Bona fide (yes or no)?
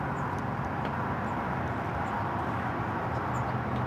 yes